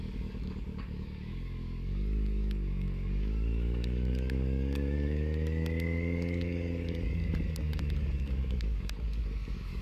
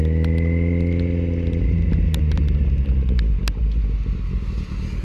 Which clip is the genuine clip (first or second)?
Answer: second